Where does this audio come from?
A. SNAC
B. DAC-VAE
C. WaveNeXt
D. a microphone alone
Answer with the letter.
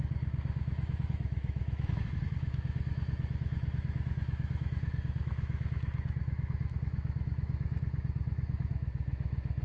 B